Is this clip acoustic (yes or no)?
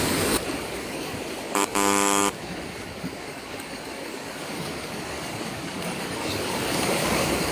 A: no